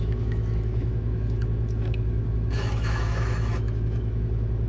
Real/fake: fake